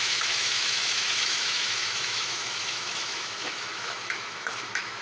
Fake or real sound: fake